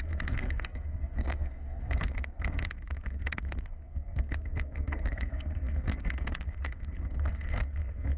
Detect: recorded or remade remade